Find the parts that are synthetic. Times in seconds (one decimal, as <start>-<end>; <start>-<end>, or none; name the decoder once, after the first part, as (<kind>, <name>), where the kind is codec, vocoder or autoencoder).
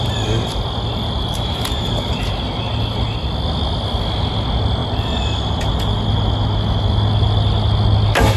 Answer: none